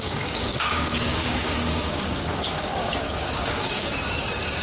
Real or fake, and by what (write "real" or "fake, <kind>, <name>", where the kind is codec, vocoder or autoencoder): fake, codec, DAC